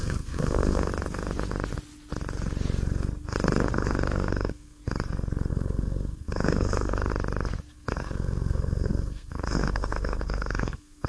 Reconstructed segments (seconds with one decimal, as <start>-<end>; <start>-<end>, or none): 0.0-0.9; 3.7-4.8; 5.5-7.1; 7.7-11.1